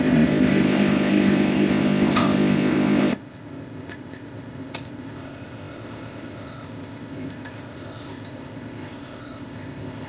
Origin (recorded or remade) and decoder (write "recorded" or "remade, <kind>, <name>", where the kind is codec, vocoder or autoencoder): remade, codec, ZipCodec